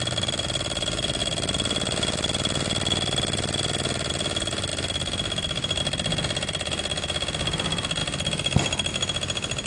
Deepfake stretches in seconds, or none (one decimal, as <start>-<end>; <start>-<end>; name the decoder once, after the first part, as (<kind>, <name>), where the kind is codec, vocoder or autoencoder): none